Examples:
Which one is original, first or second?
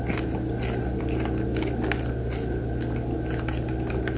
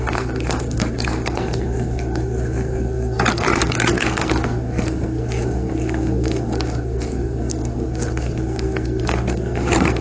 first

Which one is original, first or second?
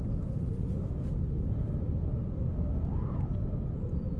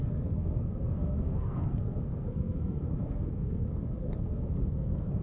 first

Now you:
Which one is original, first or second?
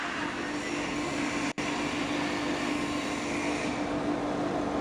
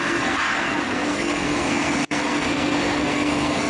first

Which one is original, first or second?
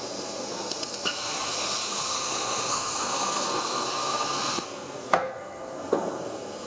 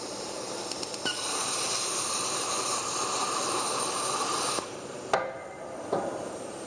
second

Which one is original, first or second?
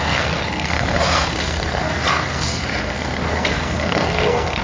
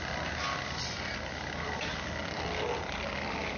second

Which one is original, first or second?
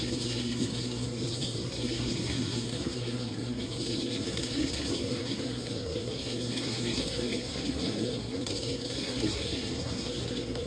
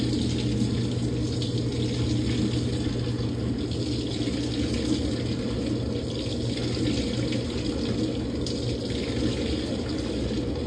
second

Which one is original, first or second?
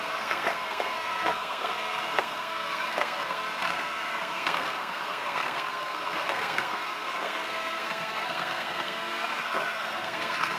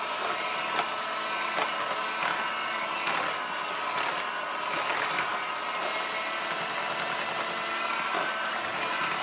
second